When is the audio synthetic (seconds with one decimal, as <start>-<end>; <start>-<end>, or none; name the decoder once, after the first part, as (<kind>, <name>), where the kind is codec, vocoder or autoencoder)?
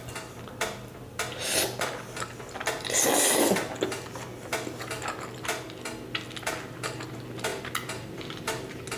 none